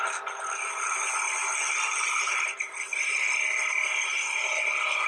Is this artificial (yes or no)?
yes